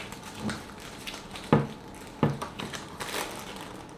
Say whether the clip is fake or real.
real